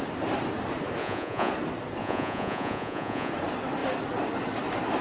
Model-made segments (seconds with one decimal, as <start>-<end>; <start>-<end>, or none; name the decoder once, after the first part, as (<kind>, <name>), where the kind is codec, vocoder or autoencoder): 1.0-1.5 (vocoder, Vocos); 2.0-3.3